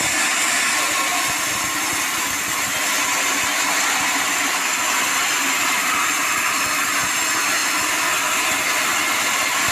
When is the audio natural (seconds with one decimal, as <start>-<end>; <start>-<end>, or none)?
0.0-9.7